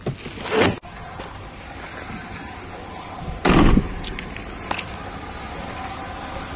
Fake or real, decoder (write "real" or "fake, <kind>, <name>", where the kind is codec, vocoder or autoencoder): real